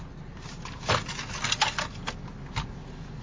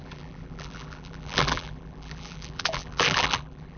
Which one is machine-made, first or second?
second